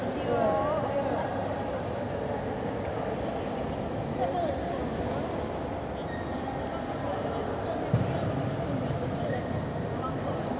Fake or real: real